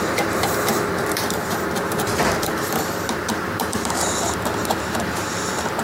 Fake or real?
fake